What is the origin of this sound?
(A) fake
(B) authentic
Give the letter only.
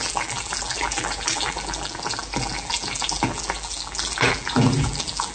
A